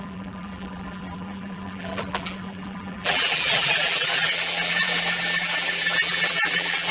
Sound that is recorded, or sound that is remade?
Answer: remade